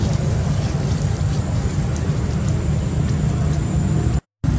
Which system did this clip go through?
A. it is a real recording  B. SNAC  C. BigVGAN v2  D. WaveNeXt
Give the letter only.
A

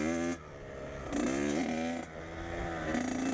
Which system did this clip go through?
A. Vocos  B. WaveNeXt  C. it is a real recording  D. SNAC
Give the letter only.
C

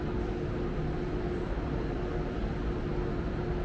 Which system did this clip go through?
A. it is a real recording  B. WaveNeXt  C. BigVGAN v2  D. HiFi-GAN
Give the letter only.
A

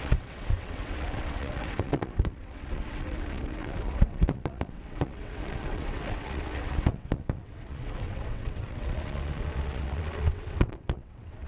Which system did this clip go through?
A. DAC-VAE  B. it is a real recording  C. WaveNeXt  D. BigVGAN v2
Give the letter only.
C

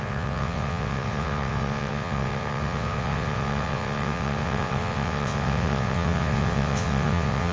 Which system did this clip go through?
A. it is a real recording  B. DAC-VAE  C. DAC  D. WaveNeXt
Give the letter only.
D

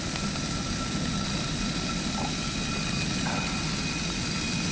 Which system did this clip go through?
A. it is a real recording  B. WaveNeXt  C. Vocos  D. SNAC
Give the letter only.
A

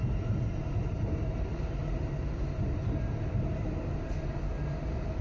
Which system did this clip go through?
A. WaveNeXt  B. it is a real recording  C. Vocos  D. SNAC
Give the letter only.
B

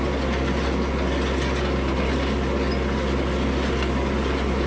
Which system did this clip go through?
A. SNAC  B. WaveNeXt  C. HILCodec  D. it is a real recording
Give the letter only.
D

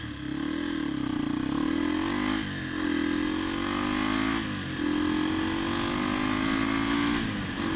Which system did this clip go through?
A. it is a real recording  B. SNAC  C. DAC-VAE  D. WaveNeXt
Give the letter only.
A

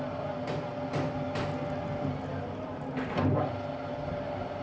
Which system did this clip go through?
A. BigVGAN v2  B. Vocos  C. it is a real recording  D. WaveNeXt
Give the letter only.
C